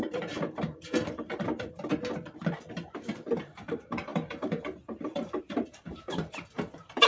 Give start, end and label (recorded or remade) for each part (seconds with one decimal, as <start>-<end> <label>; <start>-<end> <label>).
0.0-1.9 remade; 1.9-3.4 recorded; 3.4-7.1 remade